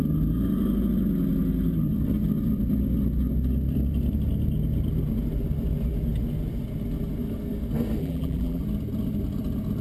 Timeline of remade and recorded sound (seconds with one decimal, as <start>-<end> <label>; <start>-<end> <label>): 0.0-8.0 recorded; 8.0-8.6 remade; 8.6-9.8 recorded